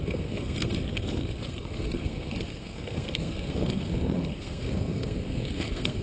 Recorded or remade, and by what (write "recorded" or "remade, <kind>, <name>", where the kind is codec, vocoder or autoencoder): remade, codec, SNAC